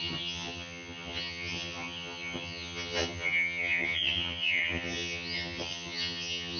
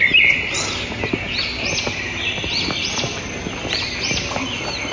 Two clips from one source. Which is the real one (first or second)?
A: second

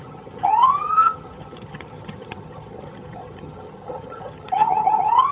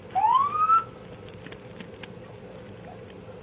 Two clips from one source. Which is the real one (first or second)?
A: second